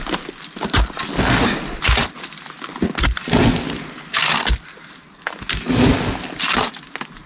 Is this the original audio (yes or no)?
yes